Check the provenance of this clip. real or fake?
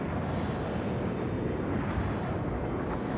real